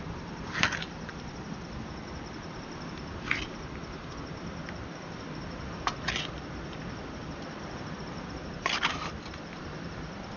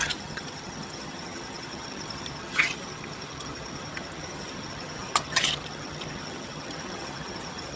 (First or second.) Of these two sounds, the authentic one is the first